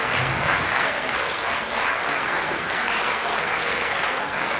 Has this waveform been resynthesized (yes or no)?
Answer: yes